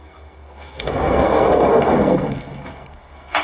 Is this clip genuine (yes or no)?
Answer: no